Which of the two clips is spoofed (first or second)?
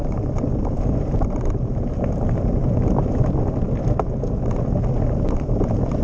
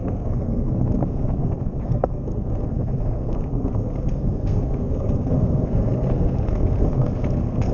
second